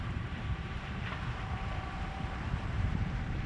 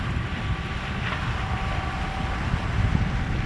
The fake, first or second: first